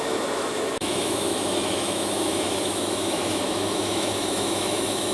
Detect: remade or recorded remade